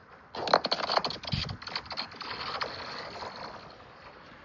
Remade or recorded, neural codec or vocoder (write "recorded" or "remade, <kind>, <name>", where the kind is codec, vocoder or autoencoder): recorded